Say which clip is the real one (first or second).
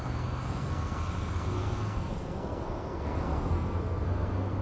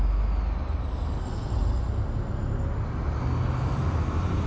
second